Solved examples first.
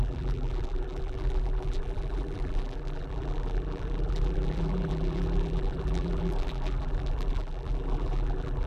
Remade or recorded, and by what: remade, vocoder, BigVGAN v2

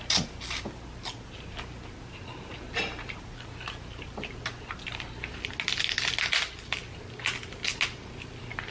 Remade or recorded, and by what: recorded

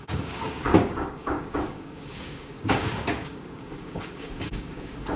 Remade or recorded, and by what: remade, codec, DAC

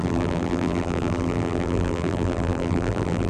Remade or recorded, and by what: remade, vocoder, BigVGAN v2